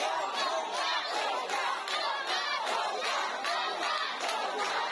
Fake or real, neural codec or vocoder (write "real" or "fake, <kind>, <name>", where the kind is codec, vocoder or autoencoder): real